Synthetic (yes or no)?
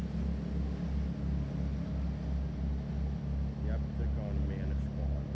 no